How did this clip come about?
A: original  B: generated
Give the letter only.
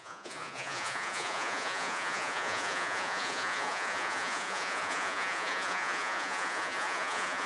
B